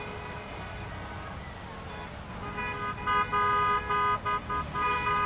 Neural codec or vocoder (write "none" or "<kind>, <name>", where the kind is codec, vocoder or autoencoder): none